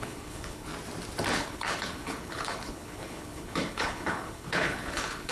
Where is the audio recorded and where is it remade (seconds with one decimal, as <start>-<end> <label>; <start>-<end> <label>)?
0.0-0.7 remade; 0.7-1.3 recorded; 1.3-5.3 remade